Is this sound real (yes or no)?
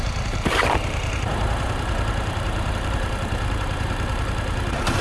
no